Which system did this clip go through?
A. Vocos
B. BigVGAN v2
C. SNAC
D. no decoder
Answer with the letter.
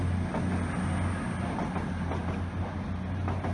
D